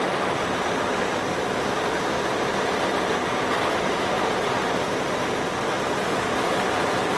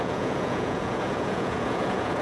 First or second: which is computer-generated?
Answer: second